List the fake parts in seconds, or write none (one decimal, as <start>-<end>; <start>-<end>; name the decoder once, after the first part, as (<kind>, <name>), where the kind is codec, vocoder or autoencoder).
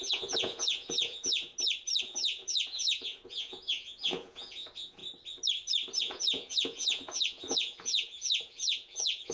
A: 0.0-1.5 (vocoder, Vocos); 2.0-5.0; 6.0-9.3